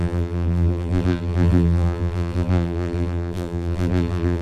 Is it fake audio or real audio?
fake